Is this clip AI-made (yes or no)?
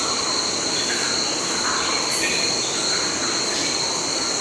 no